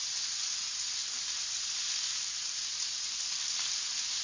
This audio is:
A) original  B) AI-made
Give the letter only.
A